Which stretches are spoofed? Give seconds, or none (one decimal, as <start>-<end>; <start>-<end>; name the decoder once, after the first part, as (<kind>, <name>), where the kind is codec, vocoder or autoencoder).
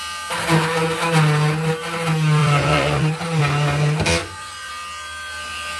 2.4-3.4 (vocoder, Vocos); 4.2-4.7